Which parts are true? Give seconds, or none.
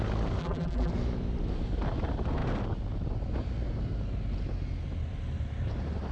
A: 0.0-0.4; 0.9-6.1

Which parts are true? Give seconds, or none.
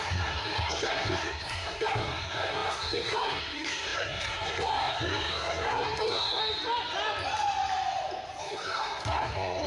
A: 6.4-8.4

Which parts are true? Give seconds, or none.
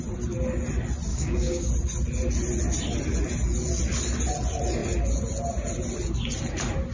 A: 0.0-1.1; 1.7-6.9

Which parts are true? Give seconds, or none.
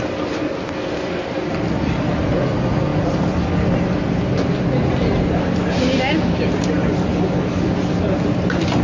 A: 0.0-8.8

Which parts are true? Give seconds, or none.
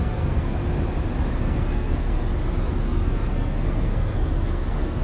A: 0.6-1.4; 2.2-2.7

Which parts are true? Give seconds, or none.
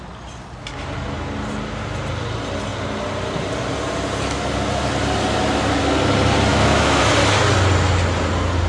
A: 0.0-6.5; 7.0-8.7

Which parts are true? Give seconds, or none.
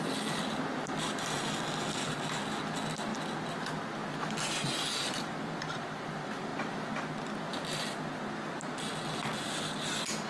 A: 0.0-10.3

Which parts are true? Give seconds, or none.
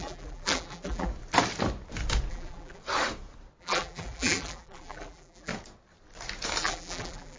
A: 1.1-2.3; 2.8-3.6; 5.5-6.6